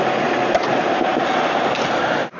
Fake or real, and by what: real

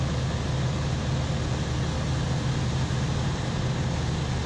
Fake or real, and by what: real